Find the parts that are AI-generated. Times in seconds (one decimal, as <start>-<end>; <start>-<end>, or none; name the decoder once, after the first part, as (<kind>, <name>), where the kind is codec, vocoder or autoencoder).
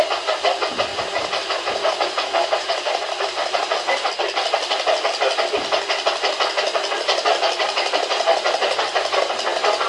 0.9-4.1 (vocoder, BigVGAN v2)